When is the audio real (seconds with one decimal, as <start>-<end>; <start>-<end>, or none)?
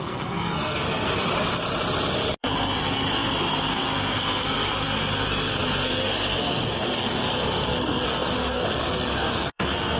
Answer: 1.3-2.4